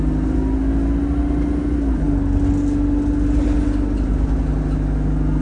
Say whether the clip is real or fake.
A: real